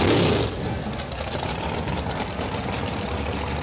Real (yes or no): yes